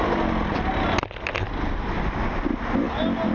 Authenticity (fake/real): real